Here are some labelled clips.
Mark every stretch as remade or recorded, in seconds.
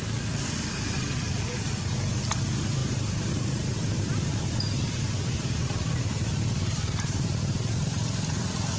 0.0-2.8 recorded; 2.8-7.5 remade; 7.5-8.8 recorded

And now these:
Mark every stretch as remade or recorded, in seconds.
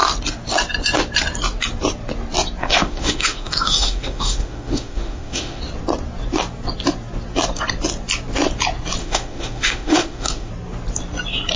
0.0-2.6 recorded; 2.6-5.6 remade; 5.6-9.0 recorded; 9.0-10.5 remade; 10.5-11.6 recorded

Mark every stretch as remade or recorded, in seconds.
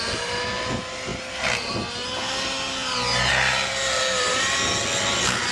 0.0-5.5 recorded